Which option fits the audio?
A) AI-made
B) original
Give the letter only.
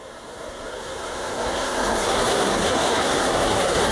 A